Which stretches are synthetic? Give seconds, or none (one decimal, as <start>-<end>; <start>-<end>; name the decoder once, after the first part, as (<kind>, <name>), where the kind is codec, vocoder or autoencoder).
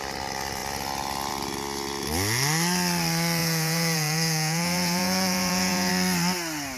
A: 3.4-5.9 (vocoder, Vocos)